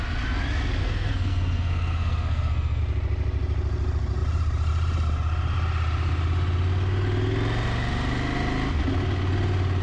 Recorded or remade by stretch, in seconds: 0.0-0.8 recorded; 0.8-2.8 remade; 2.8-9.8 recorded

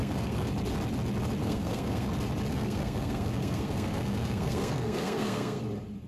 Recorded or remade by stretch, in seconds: 0.0-0.5 remade; 0.5-1.4 recorded; 1.4-2.1 remade; 2.1-2.5 recorded; 2.5-5.6 remade; 5.6-6.1 recorded

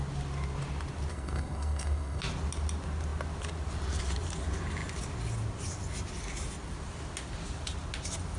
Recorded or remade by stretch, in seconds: 0.0-1.1 recorded; 1.1-2.2 remade; 2.2-8.4 recorded